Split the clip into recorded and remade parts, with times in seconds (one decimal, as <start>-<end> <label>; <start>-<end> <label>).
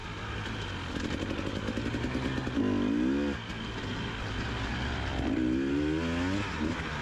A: 0.0-7.0 recorded